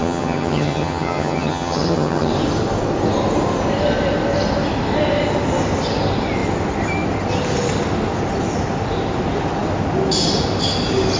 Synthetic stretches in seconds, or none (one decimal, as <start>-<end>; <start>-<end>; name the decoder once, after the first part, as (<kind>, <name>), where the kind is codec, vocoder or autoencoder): 0.0-2.3 (vocoder, HiFi-GAN)